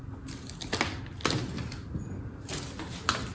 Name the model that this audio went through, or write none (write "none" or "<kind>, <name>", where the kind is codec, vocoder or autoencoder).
none